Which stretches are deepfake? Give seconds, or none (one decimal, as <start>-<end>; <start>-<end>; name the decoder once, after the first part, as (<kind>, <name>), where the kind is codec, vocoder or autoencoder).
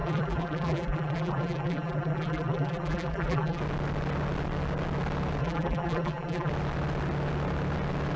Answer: 0.0-3.6 (vocoder, BigVGAN v2); 5.4-6.5